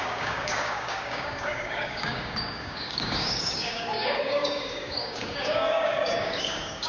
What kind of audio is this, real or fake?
fake